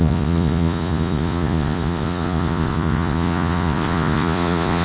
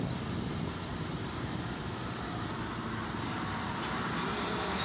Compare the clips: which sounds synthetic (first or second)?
first